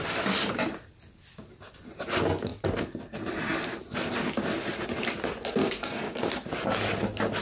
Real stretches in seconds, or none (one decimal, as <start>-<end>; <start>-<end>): 0.0-5.6; 6.3-7.4